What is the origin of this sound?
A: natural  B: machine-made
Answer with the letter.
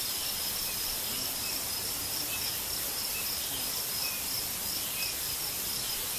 B